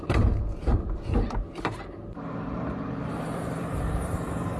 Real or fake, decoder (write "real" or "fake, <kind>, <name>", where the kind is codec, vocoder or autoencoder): fake, vocoder, BigVGAN v2